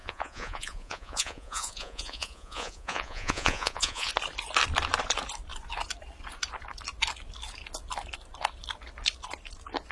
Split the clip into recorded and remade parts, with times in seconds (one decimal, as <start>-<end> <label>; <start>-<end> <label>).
0.0-4.1 remade; 4.1-9.9 recorded